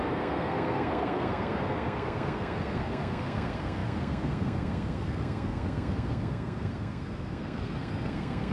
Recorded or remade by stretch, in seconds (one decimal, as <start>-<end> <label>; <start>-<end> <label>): 0.0-8.5 remade